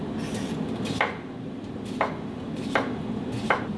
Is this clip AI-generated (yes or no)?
no